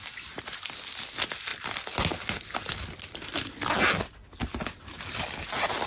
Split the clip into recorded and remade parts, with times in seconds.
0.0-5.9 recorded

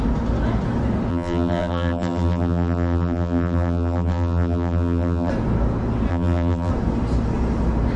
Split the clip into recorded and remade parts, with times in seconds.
0.0-1.1 recorded; 1.1-5.3 remade; 5.3-6.1 recorded; 6.1-6.7 remade; 6.7-8.0 recorded